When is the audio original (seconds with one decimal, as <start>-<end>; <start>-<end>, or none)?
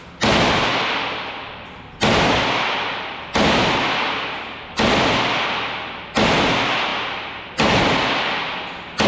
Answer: 0.0-9.1